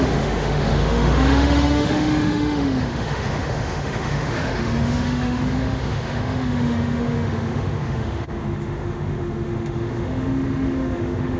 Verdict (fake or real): fake